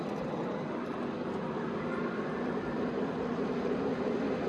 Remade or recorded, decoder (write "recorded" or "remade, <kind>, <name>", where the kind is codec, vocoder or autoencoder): remade, vocoder, BigVGAN v2